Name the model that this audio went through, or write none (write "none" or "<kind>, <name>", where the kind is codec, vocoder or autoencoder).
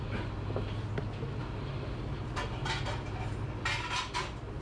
none